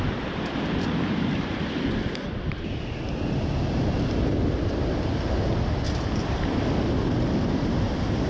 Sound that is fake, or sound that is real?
real